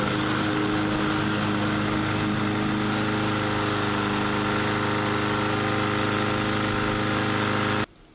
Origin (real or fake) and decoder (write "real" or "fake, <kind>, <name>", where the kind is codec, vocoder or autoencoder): real